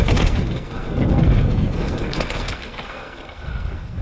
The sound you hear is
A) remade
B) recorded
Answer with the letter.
A